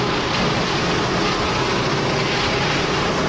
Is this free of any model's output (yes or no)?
yes